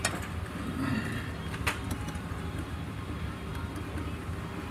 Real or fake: real